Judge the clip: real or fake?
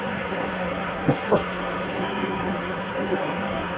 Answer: fake